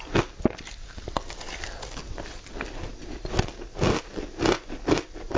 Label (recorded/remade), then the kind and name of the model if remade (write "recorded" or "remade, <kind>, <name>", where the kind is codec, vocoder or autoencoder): recorded